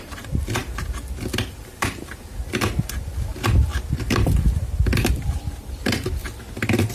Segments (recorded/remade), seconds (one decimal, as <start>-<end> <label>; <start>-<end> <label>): 0.0-0.6 remade; 0.6-1.5 recorded; 1.5-2.3 remade; 2.3-2.8 recorded; 2.8-6.2 remade; 6.2-6.9 recorded